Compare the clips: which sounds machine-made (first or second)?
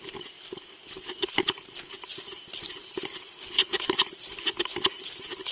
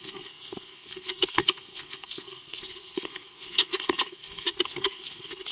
second